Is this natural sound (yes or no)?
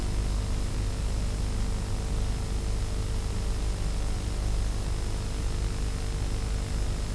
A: yes